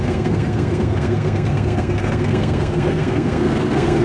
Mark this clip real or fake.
fake